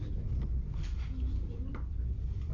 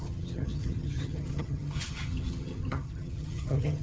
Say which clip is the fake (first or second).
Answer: second